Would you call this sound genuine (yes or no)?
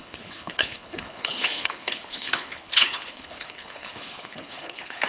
no